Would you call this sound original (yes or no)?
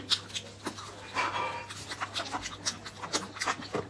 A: yes